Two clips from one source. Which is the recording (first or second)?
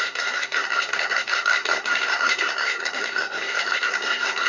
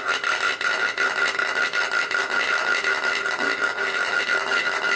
second